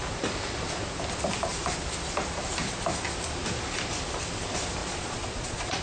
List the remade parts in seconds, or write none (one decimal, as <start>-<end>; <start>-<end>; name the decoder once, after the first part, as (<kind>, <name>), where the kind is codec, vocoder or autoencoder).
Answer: 4.8-5.8 (vocoder, Vocos)